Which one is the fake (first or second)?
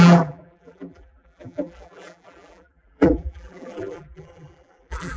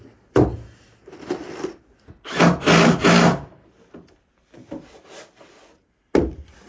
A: first